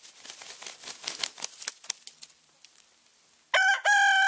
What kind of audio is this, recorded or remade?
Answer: recorded